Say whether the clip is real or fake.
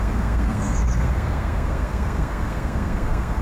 fake